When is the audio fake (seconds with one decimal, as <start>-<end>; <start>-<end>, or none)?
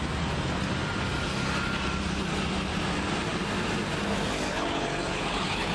4.5-5.7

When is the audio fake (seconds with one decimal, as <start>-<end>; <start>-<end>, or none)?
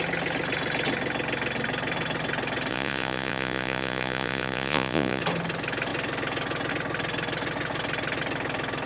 2.7-5.2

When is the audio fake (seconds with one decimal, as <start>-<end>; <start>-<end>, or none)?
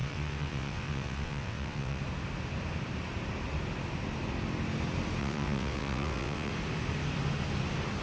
0.0-2.0; 5.2-6.5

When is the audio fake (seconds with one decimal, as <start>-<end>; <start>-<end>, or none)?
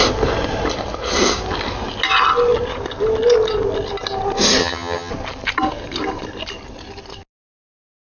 4.6-5.1